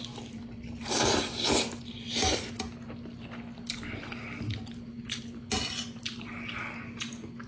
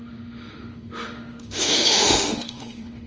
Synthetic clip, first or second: second